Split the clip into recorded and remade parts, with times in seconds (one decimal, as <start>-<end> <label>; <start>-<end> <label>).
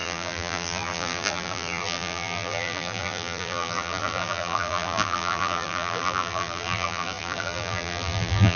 0.0-8.6 remade